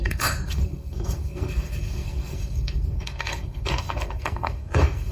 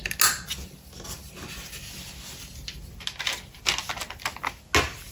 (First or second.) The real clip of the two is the second